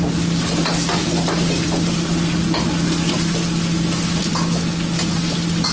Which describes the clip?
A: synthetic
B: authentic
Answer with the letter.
B